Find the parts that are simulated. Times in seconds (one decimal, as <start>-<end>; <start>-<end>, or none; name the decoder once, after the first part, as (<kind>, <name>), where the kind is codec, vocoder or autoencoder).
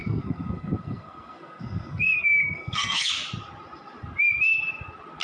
0.0-3.1 (codec, SNAC)